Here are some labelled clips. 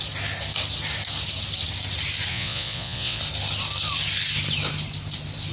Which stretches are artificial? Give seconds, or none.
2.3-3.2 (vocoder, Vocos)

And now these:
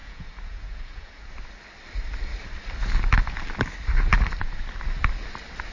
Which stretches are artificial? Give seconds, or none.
0.0-1.3 (vocoder, Vocos)